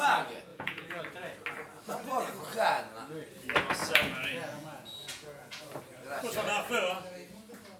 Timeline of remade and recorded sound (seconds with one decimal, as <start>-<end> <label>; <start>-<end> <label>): 0.0-0.5 recorded; 0.5-1.0 remade; 1.0-3.8 recorded; 3.8-5.6 remade; 5.6-7.8 recorded